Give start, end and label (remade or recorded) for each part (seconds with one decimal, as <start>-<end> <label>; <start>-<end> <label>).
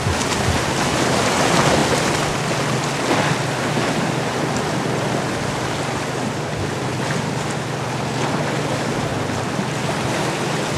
0.0-10.8 recorded